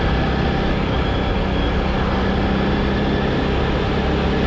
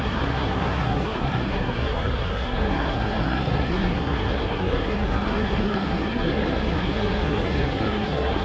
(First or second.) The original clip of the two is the first